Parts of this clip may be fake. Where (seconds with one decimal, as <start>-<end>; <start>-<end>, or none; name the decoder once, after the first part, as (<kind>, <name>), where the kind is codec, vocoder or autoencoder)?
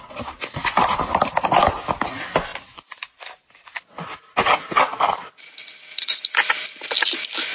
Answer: 0.6-1.2 (vocoder, BigVGAN v2)